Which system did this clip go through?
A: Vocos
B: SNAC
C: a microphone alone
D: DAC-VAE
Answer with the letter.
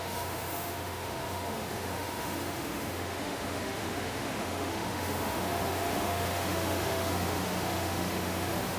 D